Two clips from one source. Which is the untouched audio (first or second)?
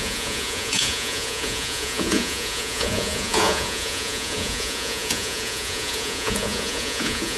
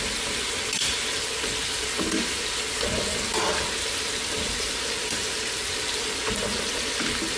second